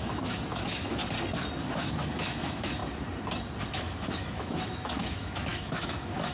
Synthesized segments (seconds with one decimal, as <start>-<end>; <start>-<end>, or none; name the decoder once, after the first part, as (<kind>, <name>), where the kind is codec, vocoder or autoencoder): 0.0-1.0 (autoencoder, DAC-VAE); 1.6-2.8; 3.7-6.3